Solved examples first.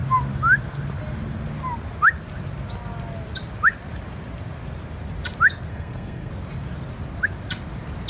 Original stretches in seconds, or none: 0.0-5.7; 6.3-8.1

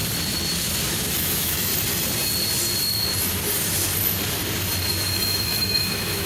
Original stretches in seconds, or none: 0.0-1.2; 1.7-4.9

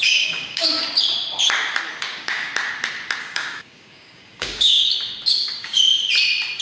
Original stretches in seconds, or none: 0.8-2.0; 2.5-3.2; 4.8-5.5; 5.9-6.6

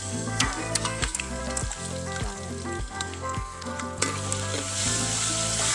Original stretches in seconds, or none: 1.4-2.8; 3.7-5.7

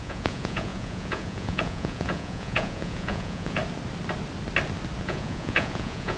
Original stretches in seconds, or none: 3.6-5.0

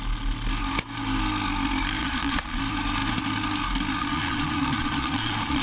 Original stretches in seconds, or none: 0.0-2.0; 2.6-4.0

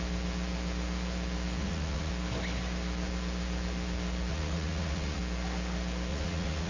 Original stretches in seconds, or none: 0.0-1.6; 2.1-4.3; 5.2-6.1